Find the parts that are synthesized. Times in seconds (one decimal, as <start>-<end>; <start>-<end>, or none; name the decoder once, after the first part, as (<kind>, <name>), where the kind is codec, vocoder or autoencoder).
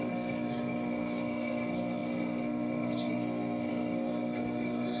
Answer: 0.0-5.0 (codec, SNAC)